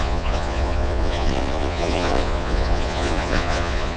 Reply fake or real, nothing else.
fake